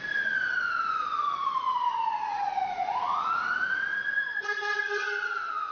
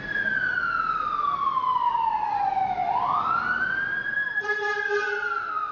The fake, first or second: first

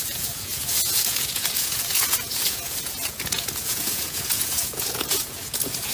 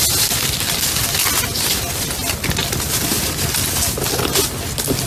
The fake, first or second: first